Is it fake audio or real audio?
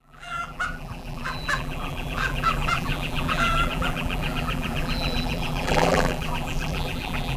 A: fake